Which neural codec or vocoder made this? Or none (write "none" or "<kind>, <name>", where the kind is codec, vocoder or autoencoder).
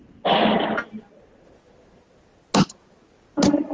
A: none